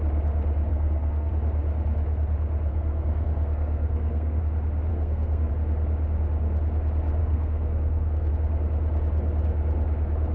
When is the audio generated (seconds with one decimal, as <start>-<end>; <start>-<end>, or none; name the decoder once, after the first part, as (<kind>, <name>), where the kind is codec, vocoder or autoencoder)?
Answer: 0.7-1.3 (codec, SNAC); 2.7-4.4; 4.9-5.5; 7.2-8.3